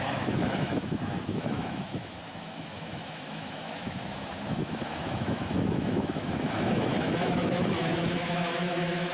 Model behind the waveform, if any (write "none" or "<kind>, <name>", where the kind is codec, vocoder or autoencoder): autoencoder, DAC-VAE